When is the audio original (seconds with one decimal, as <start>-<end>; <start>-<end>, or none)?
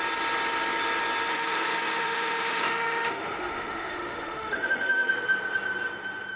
0.0-1.3; 5.1-6.4